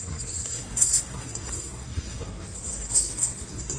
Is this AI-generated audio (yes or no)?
yes